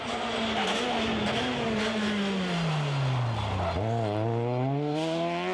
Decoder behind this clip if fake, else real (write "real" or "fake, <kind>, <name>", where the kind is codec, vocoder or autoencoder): real